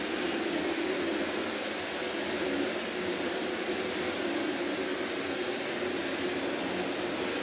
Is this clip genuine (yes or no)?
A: yes